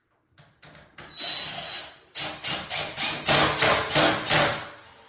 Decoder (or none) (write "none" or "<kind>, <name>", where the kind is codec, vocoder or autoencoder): none